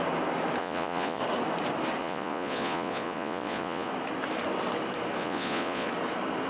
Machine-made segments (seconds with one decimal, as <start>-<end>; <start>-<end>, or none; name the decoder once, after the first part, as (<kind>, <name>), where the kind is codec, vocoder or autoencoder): 0.6-1.2 (vocoder, Vocos); 2.0-3.9; 5.2-5.9